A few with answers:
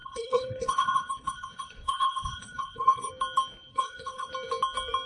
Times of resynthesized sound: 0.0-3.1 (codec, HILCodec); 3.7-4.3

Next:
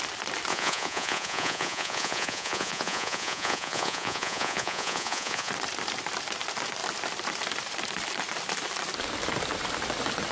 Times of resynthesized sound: 0.5-5.5 (vocoder, Vocos)

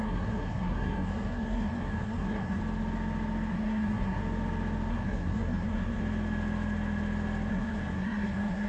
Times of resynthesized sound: 0.0-2.6 (codec, SNAC); 3.5-4.2; 4.9-6.0; 7.5-8.7

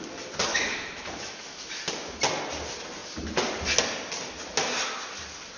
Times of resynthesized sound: 0.5-1.8 (autoencoder, DAC-VAE)

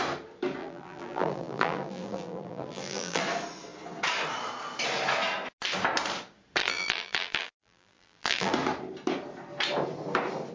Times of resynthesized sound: 0.6-3.2 (vocoder, BigVGAN v2); 6.6-8.5